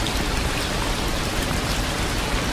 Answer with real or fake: real